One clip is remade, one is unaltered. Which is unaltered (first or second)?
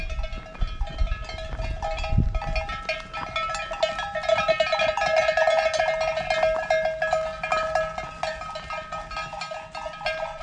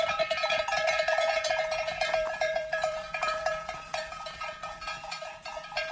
first